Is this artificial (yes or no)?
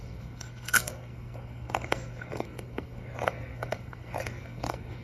yes